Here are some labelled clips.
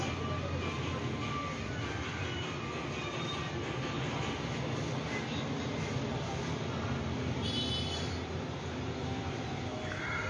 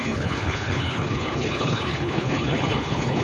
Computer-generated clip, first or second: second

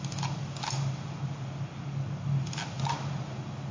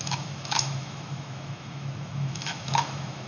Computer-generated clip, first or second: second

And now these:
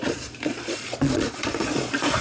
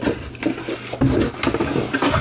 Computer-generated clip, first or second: first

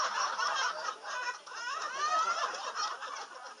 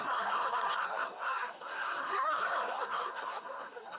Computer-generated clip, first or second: second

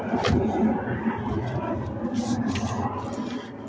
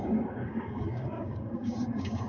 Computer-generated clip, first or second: second